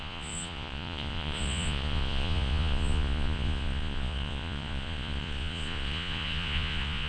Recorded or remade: remade